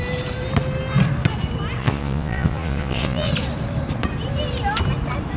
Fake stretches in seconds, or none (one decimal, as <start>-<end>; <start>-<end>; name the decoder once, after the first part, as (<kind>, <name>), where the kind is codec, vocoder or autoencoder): 1.8-3.3 (vocoder, Vocos)